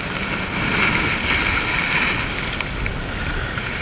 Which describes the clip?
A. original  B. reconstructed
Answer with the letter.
A